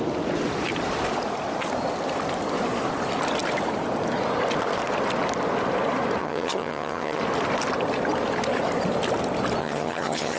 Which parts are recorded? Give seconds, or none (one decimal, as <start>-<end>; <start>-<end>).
0.0-6.2; 7.2-9.6